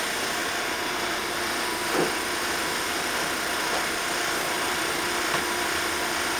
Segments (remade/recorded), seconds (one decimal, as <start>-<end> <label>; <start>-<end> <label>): 0.0-0.4 recorded; 0.4-1.2 remade; 1.2-2.6 recorded; 2.6-5.1 remade; 5.1-6.4 recorded

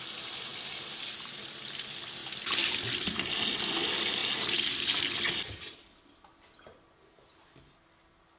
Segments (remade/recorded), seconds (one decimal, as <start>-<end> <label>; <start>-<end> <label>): 0.0-2.2 recorded; 2.2-3.4 remade; 3.4-8.4 recorded

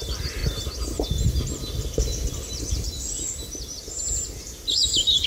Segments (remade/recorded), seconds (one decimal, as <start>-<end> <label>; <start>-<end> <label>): 0.0-0.4 remade; 0.4-2.5 recorded; 2.5-5.3 remade